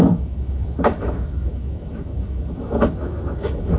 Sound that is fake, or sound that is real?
fake